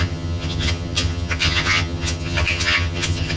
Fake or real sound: fake